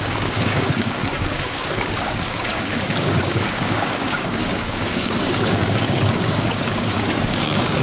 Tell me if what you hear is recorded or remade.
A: remade